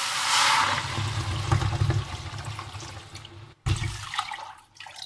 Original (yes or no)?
yes